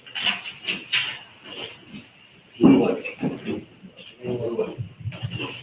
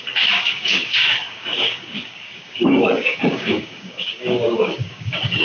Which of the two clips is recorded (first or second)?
first